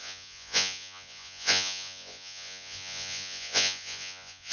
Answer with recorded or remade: remade